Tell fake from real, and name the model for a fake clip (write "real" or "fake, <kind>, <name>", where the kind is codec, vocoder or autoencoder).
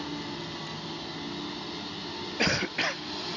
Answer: real